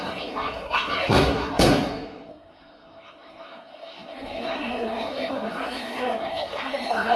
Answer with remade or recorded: remade